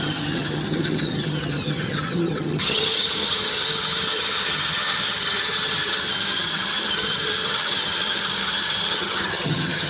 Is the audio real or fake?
fake